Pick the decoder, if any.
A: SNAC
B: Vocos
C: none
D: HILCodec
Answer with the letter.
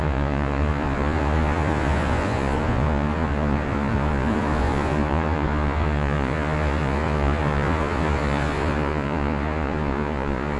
B